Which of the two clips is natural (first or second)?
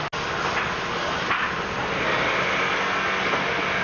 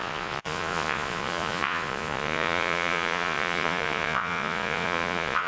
first